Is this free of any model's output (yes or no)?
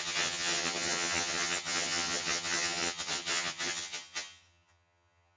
no